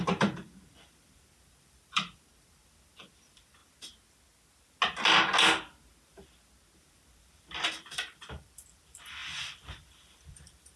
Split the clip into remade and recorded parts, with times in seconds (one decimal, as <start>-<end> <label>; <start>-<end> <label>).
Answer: 0.0-3.6 remade; 3.6-6.8 recorded; 6.8-10.8 remade